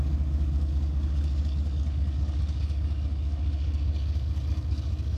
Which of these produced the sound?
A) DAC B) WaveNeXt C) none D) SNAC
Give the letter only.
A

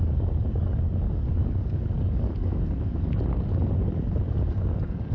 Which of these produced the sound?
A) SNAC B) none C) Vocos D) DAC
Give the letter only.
D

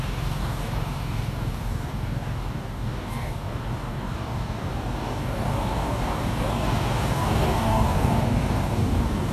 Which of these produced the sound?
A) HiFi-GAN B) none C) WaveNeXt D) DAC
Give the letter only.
D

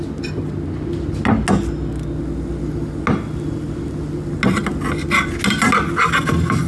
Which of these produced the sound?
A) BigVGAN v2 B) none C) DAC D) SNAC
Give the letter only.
B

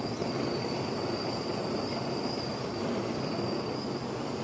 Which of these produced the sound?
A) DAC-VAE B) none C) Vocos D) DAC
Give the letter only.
B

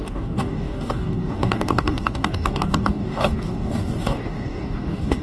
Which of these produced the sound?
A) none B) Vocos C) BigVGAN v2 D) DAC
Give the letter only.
D